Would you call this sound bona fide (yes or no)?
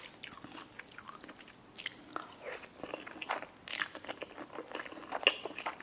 yes